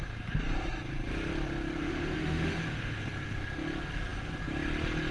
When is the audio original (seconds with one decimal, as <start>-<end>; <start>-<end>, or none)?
0.0-1.8; 2.6-5.1